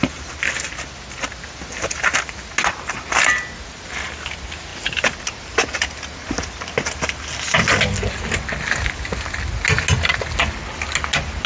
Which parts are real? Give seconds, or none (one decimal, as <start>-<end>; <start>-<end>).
0.0-11.5